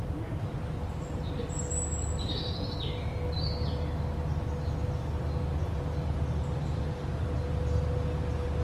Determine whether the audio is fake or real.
real